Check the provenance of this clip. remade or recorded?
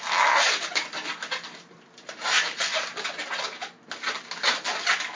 recorded